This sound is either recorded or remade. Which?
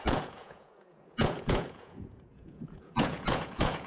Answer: remade